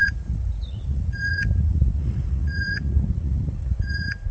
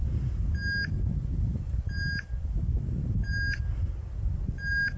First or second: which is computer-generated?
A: first